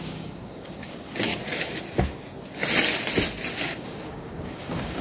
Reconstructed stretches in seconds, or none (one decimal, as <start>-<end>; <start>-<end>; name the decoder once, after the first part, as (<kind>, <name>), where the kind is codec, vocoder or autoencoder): 0.0-1.3 (codec, DAC); 3.6-5.0